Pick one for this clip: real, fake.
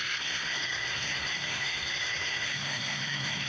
fake